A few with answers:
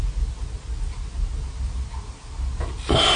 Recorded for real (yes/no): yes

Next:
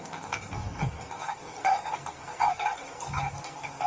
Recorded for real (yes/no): no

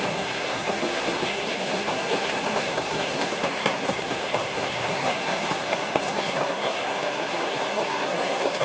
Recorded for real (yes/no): no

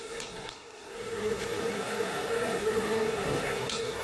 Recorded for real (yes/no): no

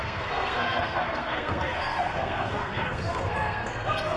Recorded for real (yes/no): no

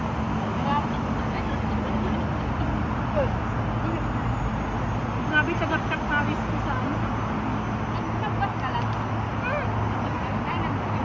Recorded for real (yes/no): yes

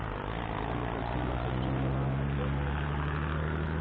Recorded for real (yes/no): yes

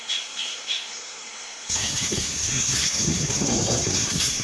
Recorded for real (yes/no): no